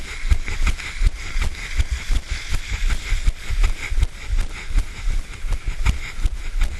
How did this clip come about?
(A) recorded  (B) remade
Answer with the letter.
A